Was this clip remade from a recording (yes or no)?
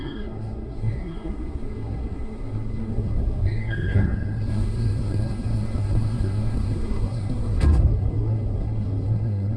yes